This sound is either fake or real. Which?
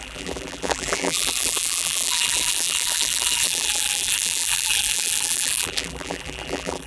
fake